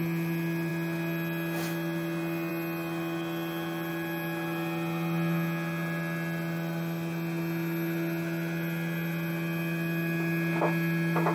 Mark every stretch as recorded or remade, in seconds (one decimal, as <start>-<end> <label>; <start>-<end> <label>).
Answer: 0.0-11.3 recorded